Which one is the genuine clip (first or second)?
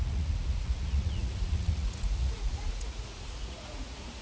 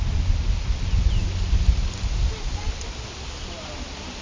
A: second